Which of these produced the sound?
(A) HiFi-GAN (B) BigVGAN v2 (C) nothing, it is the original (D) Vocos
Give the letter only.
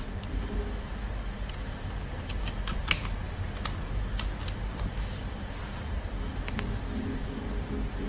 C